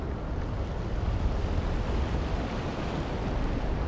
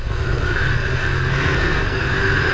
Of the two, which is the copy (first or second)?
second